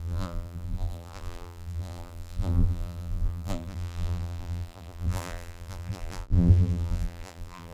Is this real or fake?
fake